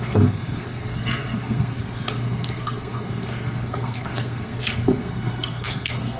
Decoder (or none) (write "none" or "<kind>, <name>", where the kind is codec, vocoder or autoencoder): codec, SNAC